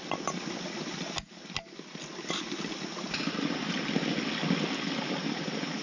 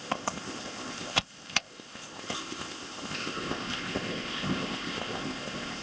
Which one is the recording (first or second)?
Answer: first